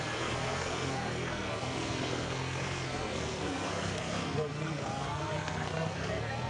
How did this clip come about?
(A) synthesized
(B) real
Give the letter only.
A